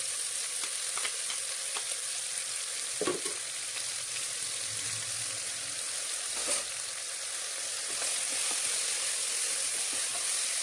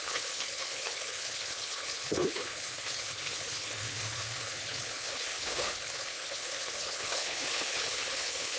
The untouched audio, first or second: first